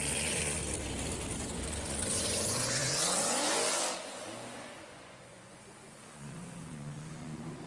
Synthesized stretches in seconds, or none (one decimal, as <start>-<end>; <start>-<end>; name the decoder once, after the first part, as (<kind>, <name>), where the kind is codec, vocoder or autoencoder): 0.0-0.6 (vocoder, Vocos); 1.4-7.7